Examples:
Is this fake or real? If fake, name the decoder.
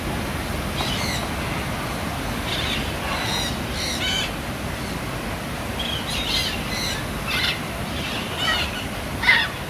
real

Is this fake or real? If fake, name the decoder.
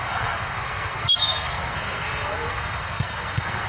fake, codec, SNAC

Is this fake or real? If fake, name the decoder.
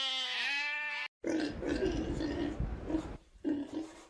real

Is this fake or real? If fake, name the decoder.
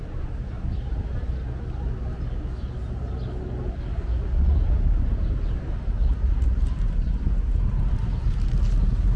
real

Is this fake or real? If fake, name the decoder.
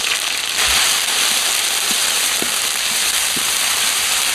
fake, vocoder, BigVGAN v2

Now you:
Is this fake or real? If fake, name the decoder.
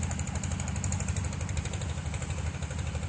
real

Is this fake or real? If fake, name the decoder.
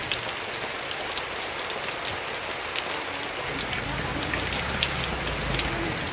real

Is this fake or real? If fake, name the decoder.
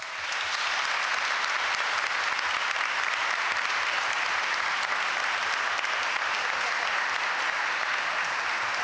real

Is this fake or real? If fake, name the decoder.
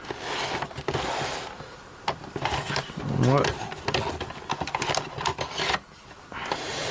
real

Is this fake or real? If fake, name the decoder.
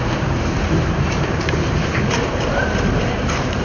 fake, vocoder, BigVGAN v2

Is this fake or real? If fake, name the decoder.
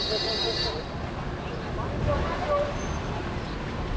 real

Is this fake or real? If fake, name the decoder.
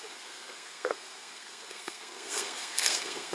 fake, codec, SNAC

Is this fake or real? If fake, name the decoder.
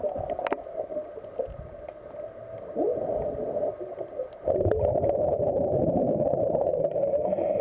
real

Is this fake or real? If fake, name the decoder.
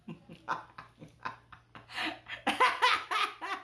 real